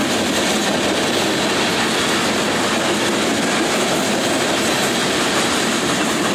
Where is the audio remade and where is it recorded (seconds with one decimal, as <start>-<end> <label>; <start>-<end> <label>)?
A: 0.0-5.0 recorded; 5.0-6.3 remade